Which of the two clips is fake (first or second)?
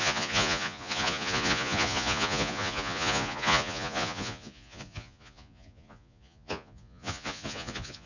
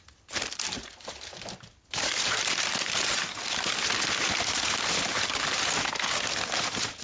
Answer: first